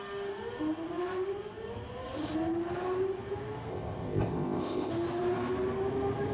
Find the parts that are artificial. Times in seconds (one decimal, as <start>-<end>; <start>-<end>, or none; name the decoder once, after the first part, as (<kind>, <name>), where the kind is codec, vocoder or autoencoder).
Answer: 3.7-4.9 (codec, ZipCodec)